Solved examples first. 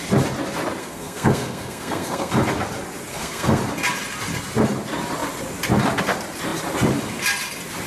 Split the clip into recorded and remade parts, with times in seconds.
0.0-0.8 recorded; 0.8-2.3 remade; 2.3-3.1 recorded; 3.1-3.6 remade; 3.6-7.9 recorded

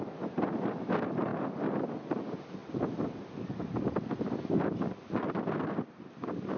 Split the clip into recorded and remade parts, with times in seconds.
0.0-6.6 recorded

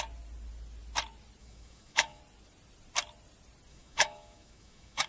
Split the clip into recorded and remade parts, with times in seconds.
0.0-1.4 recorded; 1.4-2.2 remade; 2.2-3.7 recorded; 3.7-5.1 remade

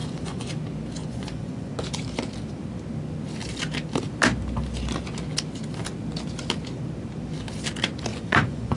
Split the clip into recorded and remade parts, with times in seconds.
0.0-0.5 remade; 0.5-1.0 recorded; 1.0-1.7 remade; 1.7-8.1 recorded; 8.1-8.8 remade

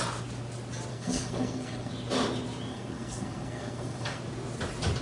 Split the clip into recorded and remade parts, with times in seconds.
0.0-0.9 recorded; 0.9-1.9 remade; 1.9-2.7 recorded; 2.7-4.2 remade; 4.2-5.0 recorded